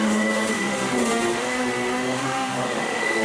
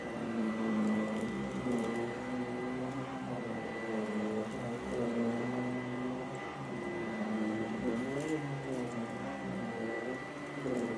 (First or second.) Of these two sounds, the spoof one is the first